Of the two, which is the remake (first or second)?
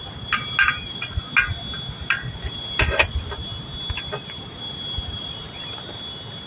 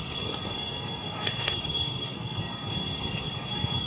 second